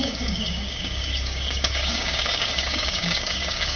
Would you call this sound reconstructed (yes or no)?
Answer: yes